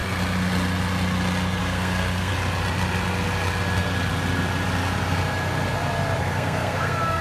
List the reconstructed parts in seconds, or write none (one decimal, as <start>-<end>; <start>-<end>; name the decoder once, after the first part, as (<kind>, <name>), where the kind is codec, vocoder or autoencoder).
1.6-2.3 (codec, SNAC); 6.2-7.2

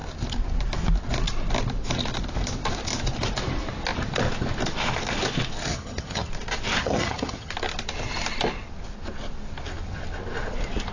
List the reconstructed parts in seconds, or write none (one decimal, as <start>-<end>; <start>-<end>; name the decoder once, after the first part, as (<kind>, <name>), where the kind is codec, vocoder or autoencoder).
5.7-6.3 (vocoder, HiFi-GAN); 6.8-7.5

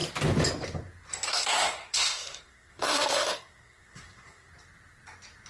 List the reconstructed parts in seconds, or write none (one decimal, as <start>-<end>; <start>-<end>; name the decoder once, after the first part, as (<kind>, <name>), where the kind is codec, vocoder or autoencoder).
1.3-4.5 (codec, SNAC)

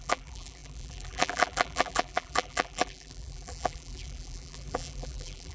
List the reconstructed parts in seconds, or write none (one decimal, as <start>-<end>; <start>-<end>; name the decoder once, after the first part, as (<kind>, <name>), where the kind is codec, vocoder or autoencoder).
0.0-5.5 (vocoder, BigVGAN v2)